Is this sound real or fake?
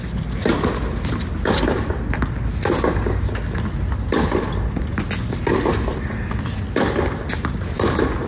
real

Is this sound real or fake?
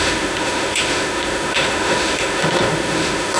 fake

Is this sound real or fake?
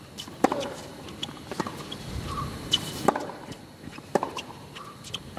fake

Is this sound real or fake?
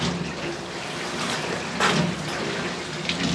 real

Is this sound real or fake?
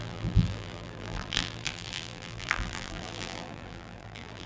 fake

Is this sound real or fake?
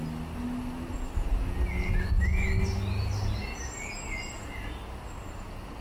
real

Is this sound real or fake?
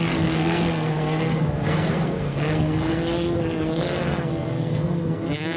fake